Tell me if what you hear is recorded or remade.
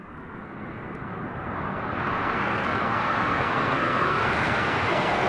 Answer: remade